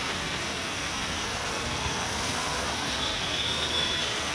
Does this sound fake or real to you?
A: fake